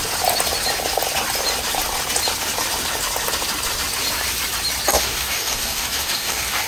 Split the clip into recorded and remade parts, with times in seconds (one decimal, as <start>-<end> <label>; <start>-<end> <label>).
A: 0.0-4.9 recorded; 4.9-6.7 remade